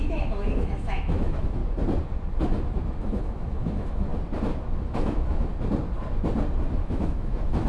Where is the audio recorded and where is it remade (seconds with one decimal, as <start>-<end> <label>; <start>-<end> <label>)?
0.0-1.6 remade; 1.6-3.0 recorded; 3.0-4.1 remade; 4.1-4.8 recorded; 4.8-5.5 remade; 5.5-6.8 recorded; 6.8-7.7 remade